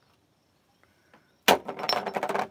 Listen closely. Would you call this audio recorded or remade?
recorded